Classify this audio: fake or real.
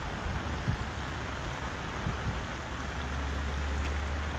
real